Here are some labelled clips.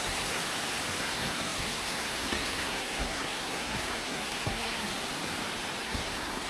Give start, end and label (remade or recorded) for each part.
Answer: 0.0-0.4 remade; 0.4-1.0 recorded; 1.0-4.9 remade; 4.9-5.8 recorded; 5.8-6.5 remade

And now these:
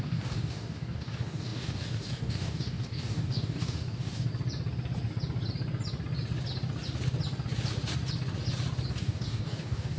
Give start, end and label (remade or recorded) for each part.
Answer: 0.0-4.3 remade; 4.3-8.9 recorded; 8.9-10.0 remade

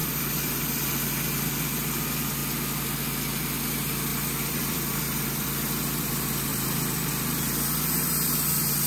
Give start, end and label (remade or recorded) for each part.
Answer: 0.0-0.9 remade; 0.9-4.1 recorded; 4.1-6.1 remade; 6.1-6.5 recorded; 6.5-7.1 remade; 7.1-8.9 recorded

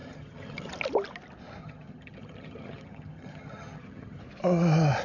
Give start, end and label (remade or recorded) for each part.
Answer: 0.0-0.7 remade; 0.7-1.6 recorded; 1.6-4.2 remade; 4.2-5.0 recorded

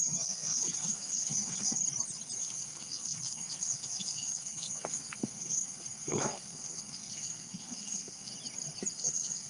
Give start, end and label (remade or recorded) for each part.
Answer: 0.0-1.8 remade; 1.8-2.4 recorded; 2.4-8.3 remade; 8.3-8.9 recorded; 8.9-9.5 remade

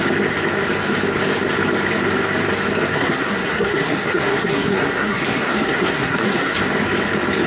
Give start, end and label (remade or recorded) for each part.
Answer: 0.0-2.9 recorded; 2.9-6.6 remade; 6.6-7.5 recorded